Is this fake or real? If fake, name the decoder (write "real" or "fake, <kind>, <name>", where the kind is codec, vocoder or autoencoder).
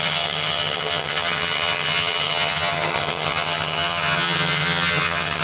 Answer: fake, vocoder, HiFi-GAN